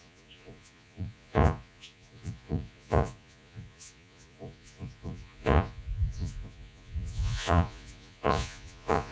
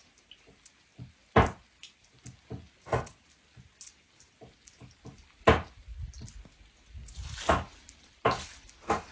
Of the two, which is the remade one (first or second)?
first